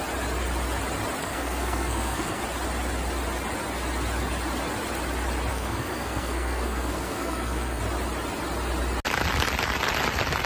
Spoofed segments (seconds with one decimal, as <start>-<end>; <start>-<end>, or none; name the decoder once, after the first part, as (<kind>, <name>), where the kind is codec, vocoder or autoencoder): 1.2-2.4 (codec, SNAC); 5.5-7.8

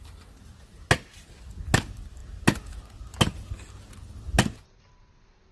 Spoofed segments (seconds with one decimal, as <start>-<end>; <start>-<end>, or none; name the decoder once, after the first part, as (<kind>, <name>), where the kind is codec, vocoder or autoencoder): none

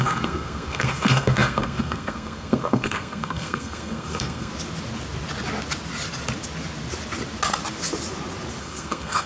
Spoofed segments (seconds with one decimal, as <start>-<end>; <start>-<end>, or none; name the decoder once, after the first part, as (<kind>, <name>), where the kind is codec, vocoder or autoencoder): 0.0-4.5 (codec, SNAC); 8.6-9.3